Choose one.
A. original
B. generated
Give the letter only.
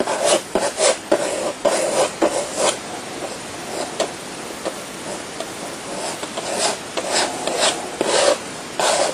A